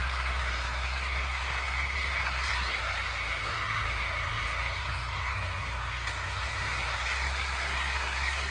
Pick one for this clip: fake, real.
fake